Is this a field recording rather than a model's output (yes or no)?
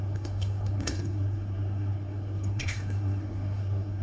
no